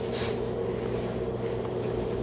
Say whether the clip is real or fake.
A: real